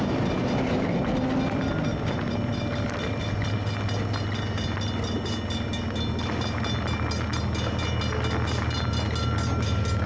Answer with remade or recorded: recorded